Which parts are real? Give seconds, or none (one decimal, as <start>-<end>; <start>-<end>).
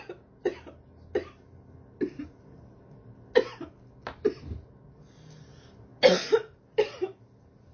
0.0-7.7